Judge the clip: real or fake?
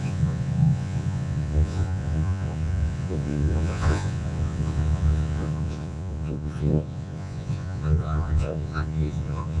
fake